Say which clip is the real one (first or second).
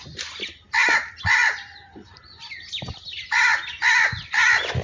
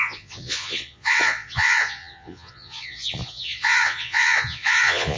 first